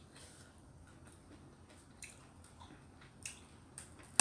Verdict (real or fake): real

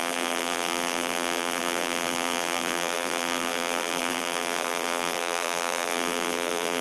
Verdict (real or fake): fake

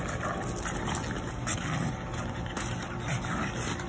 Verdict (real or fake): real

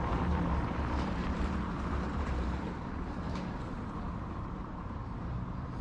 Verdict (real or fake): fake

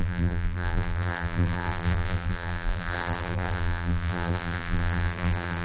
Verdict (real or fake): fake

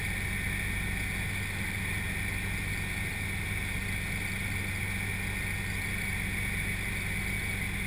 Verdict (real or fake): real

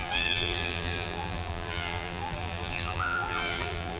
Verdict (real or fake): fake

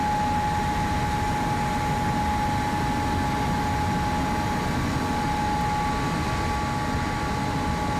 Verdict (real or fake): real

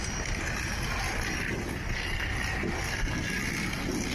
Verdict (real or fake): real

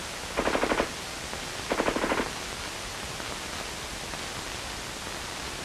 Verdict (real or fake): real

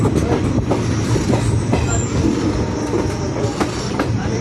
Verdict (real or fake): real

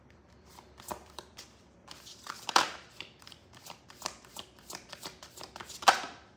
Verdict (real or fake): fake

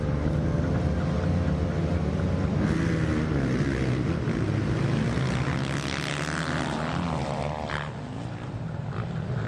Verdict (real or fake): real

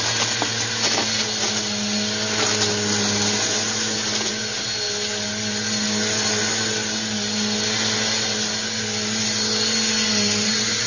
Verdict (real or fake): real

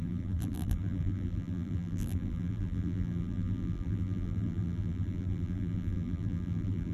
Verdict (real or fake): fake